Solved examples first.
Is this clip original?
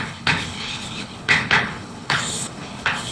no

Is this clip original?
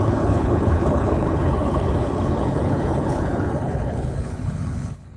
no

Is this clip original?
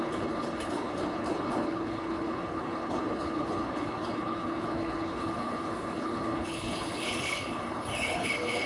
no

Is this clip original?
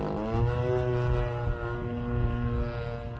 yes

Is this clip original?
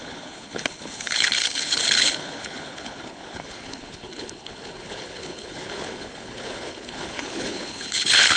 no